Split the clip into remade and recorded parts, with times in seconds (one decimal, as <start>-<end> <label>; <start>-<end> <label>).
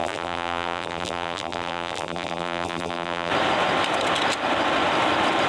0.0-3.3 remade; 3.3-5.5 recorded